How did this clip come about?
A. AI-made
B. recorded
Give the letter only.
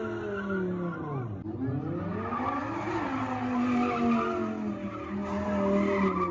B